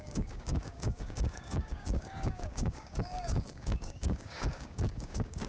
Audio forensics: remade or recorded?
remade